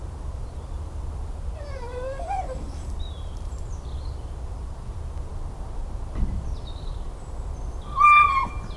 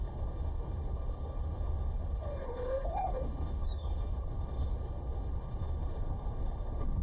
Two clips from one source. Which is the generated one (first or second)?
second